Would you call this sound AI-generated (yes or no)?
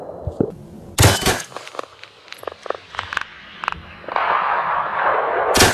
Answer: no